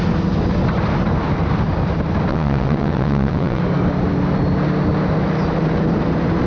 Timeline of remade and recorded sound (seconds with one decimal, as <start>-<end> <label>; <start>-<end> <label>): 0.0-2.3 recorded; 2.3-3.6 remade; 3.6-6.5 recorded